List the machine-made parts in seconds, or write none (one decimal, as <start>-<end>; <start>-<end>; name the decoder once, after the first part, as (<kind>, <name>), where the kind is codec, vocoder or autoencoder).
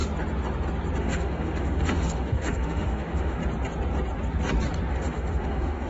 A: 1.0-3.4 (autoencoder, DAC-VAE); 4.9-5.9